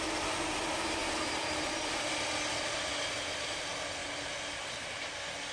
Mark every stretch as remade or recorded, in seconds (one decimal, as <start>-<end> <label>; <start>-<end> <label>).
0.0-5.5 recorded